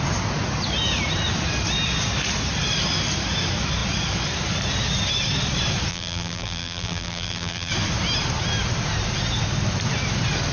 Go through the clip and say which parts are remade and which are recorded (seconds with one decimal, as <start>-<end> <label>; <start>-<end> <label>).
0.0-5.9 recorded; 5.9-7.7 remade; 7.7-10.5 recorded